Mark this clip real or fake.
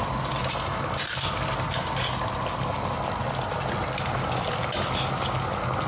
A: real